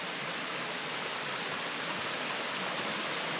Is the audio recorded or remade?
recorded